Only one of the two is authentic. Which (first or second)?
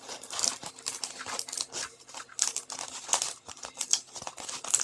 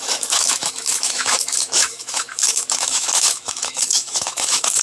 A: first